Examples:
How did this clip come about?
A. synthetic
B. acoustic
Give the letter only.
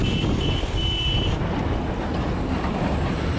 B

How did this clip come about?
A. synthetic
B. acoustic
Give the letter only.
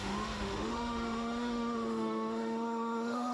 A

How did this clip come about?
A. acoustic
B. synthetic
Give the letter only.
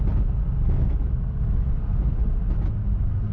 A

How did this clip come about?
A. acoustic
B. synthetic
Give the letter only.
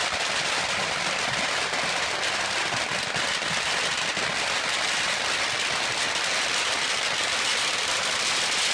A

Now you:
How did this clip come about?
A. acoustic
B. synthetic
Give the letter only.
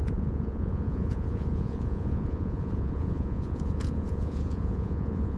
B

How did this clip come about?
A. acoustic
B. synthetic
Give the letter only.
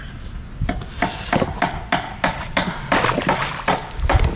A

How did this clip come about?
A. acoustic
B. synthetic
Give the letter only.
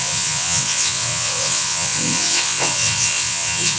B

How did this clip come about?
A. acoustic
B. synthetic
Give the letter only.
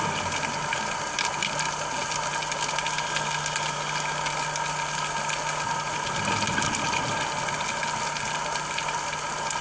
A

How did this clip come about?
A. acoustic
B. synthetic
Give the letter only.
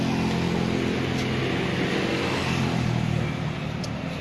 A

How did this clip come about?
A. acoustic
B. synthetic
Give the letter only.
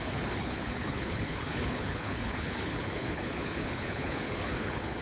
B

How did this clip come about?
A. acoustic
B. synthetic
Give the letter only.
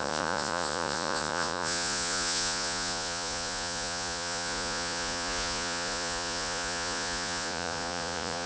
B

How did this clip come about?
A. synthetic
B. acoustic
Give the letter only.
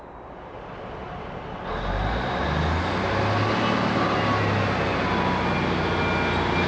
B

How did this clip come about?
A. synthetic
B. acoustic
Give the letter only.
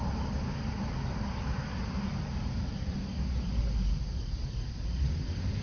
B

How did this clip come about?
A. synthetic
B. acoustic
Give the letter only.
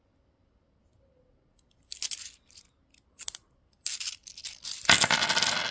B